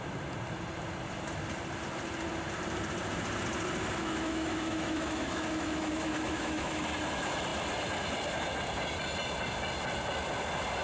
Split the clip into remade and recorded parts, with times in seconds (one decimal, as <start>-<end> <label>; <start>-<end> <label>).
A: 0.0-4.0 recorded; 4.0-6.8 remade; 6.8-10.8 recorded